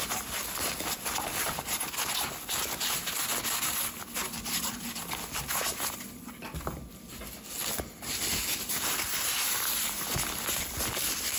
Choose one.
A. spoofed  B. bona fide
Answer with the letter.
B